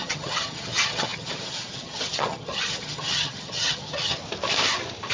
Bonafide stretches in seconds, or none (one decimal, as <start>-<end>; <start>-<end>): 4.2-5.1